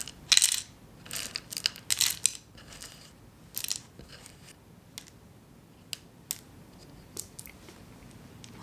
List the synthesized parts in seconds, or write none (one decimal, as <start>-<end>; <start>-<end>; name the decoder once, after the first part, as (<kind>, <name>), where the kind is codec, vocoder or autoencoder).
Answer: none

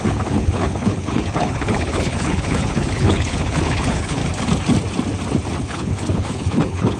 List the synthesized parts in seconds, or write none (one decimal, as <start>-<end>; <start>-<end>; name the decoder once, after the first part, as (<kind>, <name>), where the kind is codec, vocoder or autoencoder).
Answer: 0.0-4.2 (codec, HILCodec); 5.6-7.0

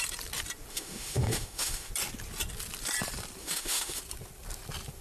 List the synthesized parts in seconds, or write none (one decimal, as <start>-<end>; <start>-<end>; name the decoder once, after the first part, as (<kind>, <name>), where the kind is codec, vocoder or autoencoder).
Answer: 0.7-1.9 (autoencoder, DAC-VAE); 3.4-4.0

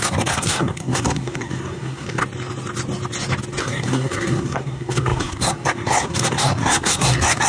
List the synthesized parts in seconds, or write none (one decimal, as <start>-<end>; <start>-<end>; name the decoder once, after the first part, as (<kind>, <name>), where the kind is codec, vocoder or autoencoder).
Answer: 0.0-2.2 (codec, SNAC); 3.6-7.5

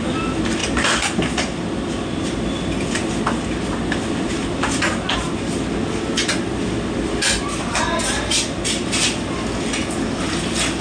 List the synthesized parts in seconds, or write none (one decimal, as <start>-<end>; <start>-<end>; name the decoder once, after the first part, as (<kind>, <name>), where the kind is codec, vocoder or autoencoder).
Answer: none